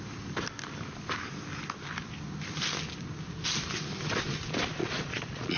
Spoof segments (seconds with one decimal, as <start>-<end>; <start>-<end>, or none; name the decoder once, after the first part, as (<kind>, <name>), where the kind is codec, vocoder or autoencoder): 4.8-5.6 (vocoder, Vocos)